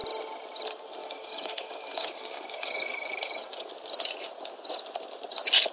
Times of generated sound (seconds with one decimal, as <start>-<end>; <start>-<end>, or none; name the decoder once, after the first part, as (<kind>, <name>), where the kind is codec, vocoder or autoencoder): 1.0-3.7 (codec, DAC)